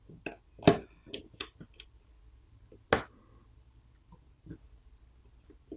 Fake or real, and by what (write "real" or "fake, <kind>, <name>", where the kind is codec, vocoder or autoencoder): real